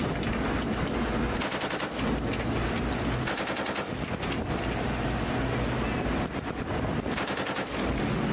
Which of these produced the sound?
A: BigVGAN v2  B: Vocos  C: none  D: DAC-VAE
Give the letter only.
C